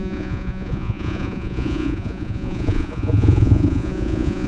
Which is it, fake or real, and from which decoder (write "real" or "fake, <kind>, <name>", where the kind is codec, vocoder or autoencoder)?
fake, vocoder, Vocos